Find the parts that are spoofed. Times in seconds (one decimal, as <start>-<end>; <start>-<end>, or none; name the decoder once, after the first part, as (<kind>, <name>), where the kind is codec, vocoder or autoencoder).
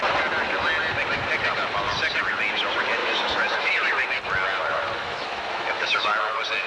3.0-3.7 (autoencoder, DAC-VAE); 5.0-6.2